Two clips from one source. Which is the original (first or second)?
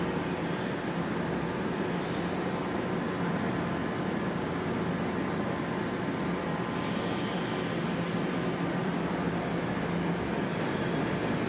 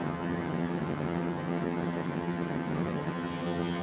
first